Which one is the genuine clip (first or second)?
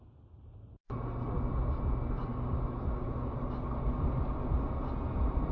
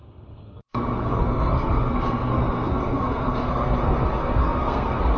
first